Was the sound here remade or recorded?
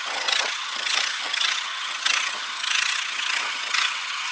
remade